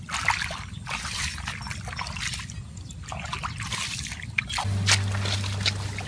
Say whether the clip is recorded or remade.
recorded